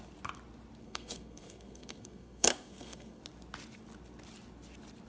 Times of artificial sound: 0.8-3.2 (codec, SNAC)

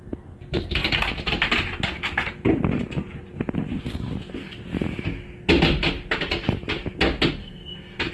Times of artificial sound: 7.4-8.1 (codec, SNAC)